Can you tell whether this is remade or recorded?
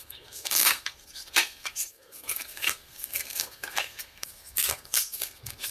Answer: remade